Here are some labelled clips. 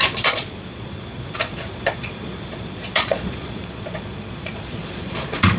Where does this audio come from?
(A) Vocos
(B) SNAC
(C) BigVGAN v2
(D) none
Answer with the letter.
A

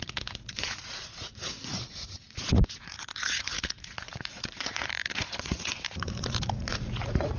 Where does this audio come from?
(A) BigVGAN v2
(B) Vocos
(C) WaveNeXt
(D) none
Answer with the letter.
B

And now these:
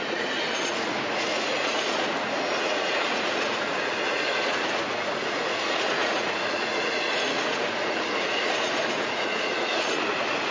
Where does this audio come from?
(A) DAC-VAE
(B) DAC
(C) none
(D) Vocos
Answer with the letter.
D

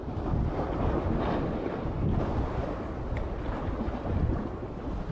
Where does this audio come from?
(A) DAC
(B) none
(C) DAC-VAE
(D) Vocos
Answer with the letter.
B